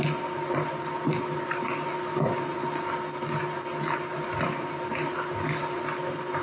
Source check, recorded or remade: recorded